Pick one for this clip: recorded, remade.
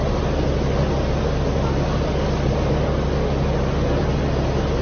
recorded